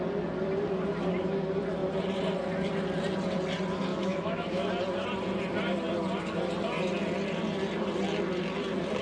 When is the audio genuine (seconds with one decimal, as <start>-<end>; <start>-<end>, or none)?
0.0-3.9; 4.7-9.0